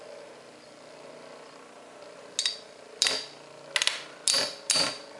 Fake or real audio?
real